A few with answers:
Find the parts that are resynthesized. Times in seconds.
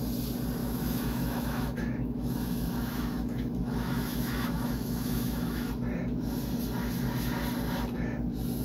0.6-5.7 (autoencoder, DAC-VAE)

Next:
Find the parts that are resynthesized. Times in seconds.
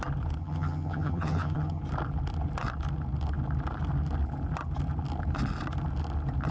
0.4-1.8 (vocoder, HiFi-GAN)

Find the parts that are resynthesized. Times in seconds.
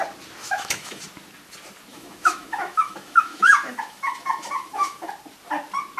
0.4-1.0 (autoencoder, DAC-VAE); 1.9-5.1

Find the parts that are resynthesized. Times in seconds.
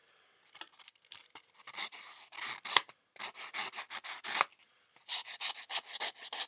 0.0-3.2 (vocoder, BigVGAN v2)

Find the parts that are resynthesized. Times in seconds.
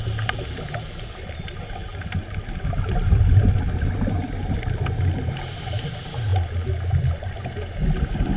none